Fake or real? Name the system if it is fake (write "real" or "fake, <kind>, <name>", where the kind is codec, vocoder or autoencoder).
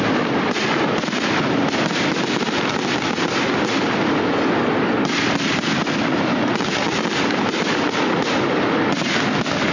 real